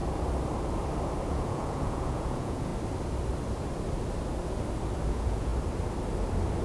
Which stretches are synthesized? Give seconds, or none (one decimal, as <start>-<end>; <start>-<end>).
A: 1.3-2.7; 5.1-5.5